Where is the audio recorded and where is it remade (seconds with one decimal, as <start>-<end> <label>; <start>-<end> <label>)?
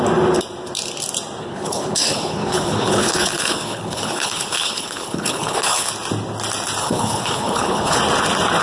0.0-1.4 recorded; 1.4-5.9 remade; 5.9-6.8 recorded; 6.8-8.0 remade; 8.0-8.6 recorded